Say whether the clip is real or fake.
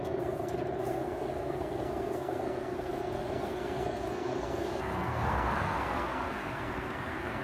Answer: fake